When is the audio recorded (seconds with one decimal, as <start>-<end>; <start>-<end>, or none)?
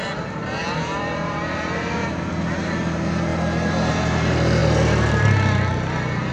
none